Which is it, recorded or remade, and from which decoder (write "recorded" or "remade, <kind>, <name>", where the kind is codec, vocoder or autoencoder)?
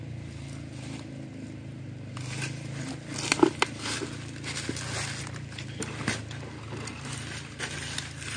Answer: recorded